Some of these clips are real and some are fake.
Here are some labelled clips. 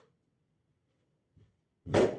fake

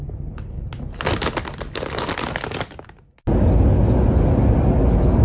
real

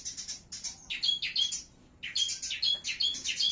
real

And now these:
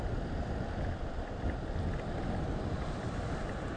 real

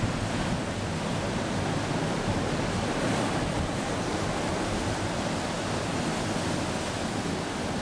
real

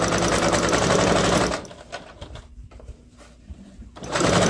real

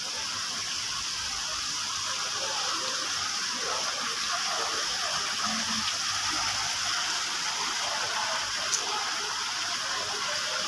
real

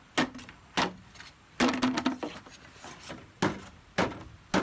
real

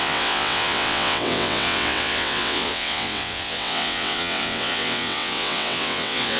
fake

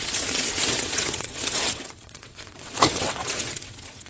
fake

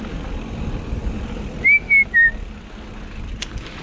real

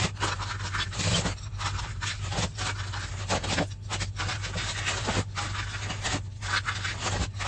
real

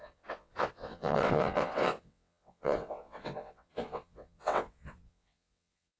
fake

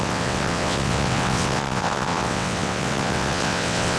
fake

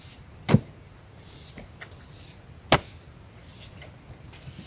real